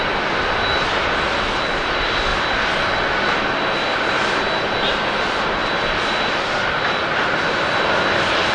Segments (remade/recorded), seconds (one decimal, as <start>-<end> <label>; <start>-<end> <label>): 0.0-2.3 remade; 2.3-4.8 recorded; 4.8-5.6 remade; 5.6-6.1 recorded; 6.1-8.5 remade